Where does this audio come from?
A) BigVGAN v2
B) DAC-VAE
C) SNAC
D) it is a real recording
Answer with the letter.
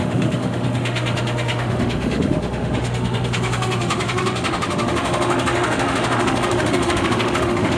B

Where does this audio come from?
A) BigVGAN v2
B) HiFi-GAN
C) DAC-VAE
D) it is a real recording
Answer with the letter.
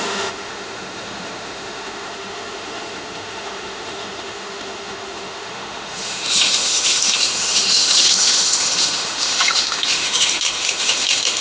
C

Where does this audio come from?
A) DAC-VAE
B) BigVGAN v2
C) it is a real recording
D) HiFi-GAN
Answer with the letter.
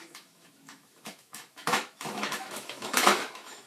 A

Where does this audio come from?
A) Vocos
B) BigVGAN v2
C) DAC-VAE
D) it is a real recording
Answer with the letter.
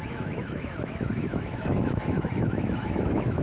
C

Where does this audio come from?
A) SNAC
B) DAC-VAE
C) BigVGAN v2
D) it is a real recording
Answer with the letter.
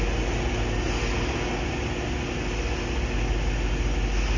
D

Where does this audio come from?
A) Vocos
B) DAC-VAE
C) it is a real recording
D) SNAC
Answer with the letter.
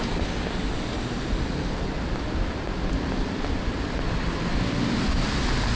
C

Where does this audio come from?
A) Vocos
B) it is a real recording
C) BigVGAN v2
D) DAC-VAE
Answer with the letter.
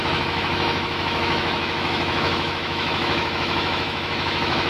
D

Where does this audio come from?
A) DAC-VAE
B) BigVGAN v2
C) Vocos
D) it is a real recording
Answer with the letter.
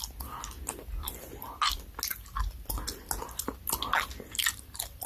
D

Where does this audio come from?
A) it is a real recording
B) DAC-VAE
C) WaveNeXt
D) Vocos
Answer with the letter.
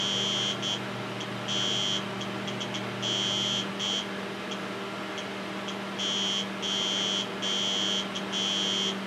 A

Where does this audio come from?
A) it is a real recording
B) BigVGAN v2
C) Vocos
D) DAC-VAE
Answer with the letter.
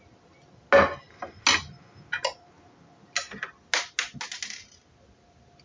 A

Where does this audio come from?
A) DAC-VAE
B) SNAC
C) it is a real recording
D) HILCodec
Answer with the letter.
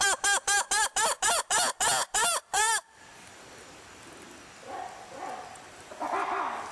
C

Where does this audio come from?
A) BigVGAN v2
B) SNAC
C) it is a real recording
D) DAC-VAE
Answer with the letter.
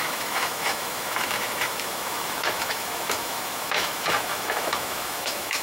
D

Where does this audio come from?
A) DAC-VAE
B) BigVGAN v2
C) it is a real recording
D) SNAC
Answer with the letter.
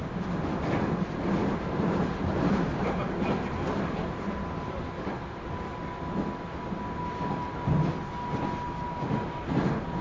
C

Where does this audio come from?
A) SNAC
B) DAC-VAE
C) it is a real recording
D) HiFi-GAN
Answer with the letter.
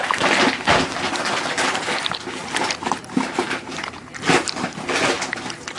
C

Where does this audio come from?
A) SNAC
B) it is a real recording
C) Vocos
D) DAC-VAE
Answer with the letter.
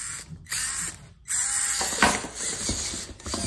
B